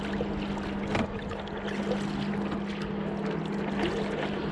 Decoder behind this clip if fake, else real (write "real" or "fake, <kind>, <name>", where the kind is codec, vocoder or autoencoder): real